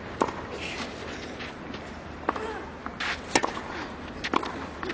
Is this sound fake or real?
real